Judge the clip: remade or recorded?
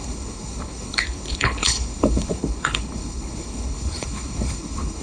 remade